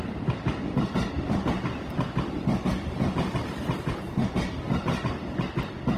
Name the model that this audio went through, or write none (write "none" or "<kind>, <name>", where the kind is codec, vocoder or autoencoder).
none